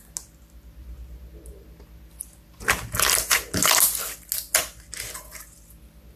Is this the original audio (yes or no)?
yes